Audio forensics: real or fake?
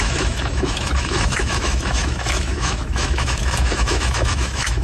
fake